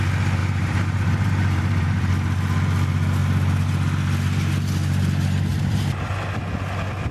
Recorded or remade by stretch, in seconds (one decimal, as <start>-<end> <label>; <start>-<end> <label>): 0.0-0.4 recorded; 0.4-2.1 remade; 2.1-5.5 recorded; 5.5-6.1 remade; 6.1-7.1 recorded